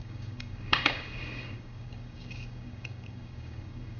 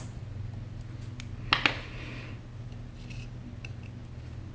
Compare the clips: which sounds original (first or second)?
second